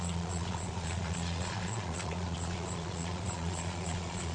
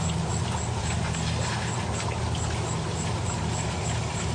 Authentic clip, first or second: second